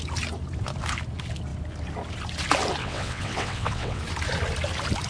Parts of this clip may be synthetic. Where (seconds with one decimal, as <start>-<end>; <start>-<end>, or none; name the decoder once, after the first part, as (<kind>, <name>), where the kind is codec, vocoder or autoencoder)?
2.8-4.0 (vocoder, WaveNeXt)